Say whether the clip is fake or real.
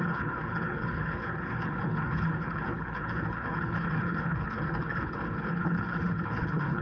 fake